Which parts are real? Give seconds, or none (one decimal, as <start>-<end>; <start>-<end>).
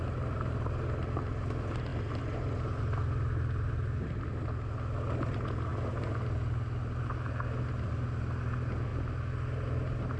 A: 0.0-10.2